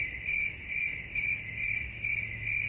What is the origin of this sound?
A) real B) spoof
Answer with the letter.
A